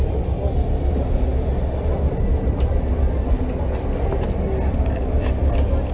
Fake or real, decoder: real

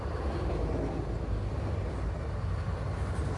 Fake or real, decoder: real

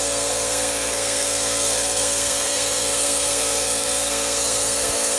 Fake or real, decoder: fake, codec, SNAC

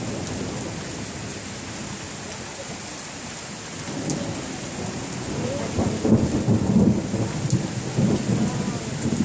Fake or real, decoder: real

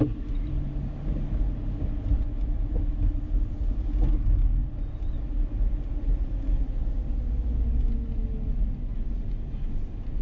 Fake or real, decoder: real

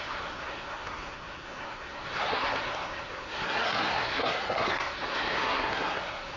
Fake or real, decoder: fake, codec, SNAC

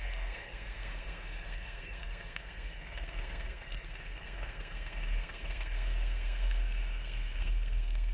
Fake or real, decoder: fake, codec, SNAC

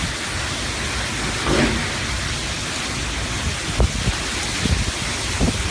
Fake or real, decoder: real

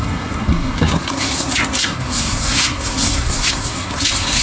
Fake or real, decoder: fake, codec, SNAC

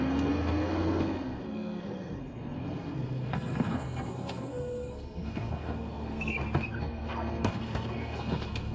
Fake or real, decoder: fake, codec, SNAC